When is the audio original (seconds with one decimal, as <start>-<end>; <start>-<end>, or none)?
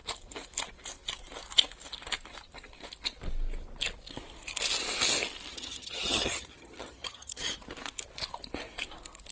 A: 0.0-5.5; 7.5-9.3